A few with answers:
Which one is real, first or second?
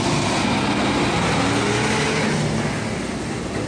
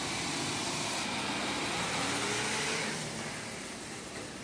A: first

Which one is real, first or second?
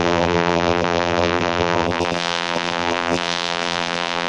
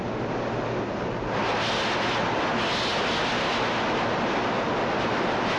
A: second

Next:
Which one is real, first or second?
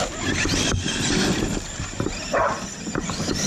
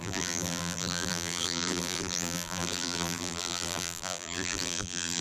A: first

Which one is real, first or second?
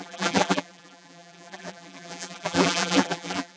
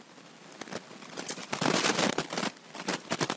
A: second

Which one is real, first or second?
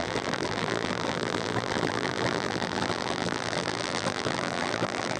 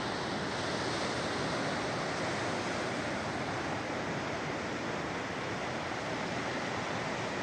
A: second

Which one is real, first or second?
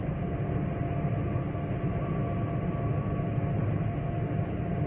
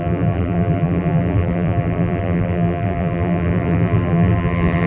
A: first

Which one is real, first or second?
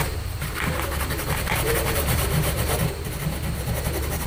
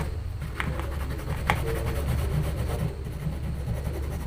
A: second